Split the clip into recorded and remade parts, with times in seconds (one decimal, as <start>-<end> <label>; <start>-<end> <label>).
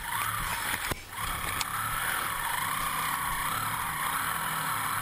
0.0-5.0 recorded